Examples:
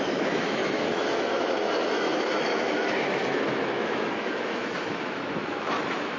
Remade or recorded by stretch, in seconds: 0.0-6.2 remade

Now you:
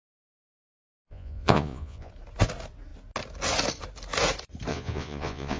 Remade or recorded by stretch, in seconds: 0.0-1.0 recorded; 1.0-2.1 remade; 2.1-4.7 recorded; 4.7-5.6 remade

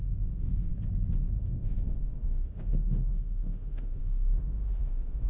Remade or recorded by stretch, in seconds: 0.0-0.7 remade; 0.7-1.4 recorded; 1.4-5.3 remade